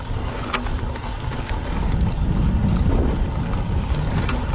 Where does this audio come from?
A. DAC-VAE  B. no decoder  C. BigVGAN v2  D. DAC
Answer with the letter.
B